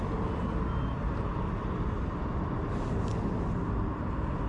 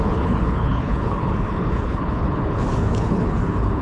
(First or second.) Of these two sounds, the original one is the first